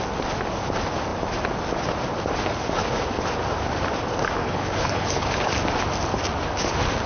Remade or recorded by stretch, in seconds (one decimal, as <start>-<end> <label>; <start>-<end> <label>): 0.0-4.4 recorded; 4.4-5.5 remade; 5.5-7.1 recorded